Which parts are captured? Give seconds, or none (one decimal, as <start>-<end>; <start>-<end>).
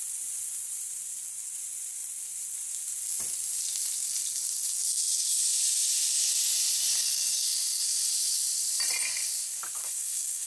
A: 0.0-7.0; 8.1-9.8